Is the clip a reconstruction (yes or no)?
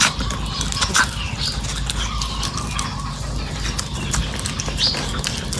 no